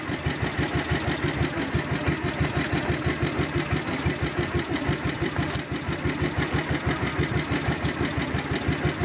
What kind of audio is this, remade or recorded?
recorded